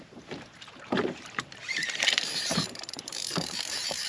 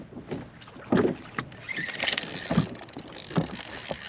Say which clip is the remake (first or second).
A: first